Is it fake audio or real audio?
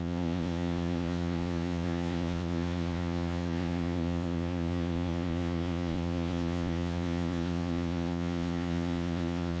fake